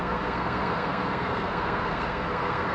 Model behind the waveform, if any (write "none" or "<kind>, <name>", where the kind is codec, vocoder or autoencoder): codec, SNAC